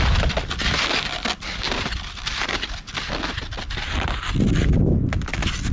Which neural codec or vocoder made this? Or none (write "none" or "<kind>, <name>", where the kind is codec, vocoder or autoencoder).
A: none